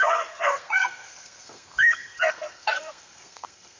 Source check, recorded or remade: remade